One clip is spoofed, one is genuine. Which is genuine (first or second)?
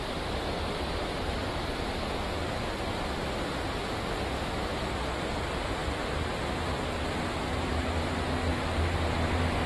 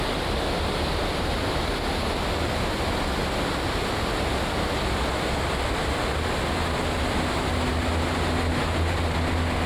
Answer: second